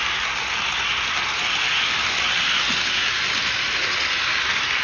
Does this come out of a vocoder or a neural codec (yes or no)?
no